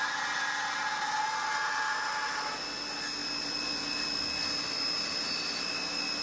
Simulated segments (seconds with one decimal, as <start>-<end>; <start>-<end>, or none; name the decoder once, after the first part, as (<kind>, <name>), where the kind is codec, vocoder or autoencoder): none